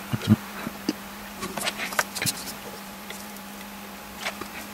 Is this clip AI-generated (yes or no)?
no